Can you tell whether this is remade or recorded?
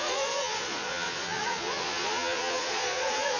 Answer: remade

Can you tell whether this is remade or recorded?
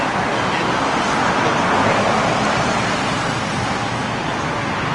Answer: recorded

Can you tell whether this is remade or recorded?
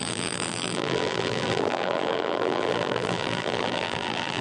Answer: remade